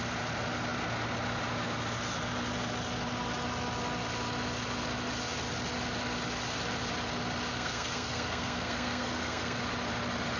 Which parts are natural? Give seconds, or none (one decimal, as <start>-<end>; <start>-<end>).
0.0-7.5; 9.6-10.4